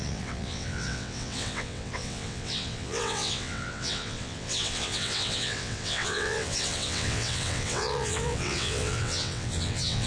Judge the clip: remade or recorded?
remade